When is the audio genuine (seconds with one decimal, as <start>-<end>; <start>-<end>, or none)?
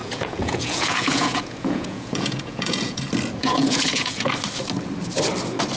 3.0-3.4; 4.3-5.8